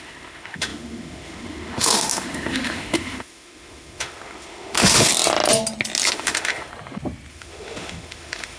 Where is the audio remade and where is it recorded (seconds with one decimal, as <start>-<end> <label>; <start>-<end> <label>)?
0.0-5.1 remade; 5.1-6.1 recorded; 6.1-6.7 remade; 6.7-7.3 recorded; 7.3-8.6 remade